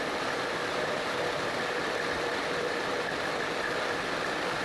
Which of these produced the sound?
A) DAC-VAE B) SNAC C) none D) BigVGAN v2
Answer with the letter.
D